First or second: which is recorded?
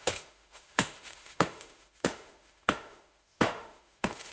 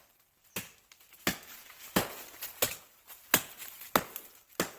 second